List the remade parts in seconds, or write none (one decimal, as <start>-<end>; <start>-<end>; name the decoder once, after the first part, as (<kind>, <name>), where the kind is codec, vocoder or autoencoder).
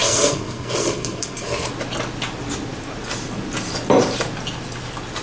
0.0-1.7 (codec, SNAC)